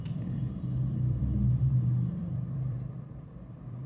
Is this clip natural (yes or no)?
no